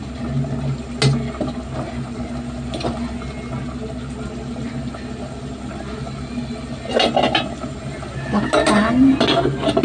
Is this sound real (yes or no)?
yes